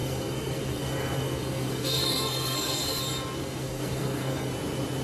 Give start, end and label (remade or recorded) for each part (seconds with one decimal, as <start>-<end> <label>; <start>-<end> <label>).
0.0-3.0 remade; 3.0-3.4 recorded; 3.4-4.5 remade; 4.5-5.0 recorded